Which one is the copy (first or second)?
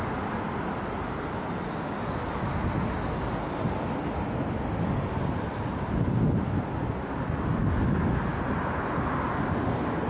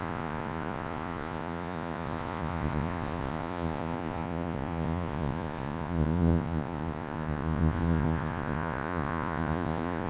second